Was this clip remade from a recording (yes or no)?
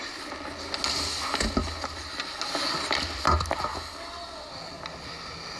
no